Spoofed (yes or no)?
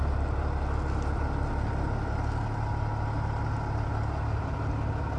no